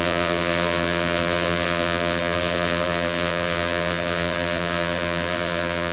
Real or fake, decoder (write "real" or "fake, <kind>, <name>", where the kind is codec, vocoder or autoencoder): fake, vocoder, BigVGAN v2